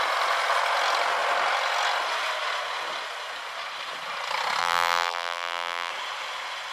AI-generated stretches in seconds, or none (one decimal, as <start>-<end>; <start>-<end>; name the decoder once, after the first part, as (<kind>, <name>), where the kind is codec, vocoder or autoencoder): 4.6-5.9 (vocoder, BigVGAN v2)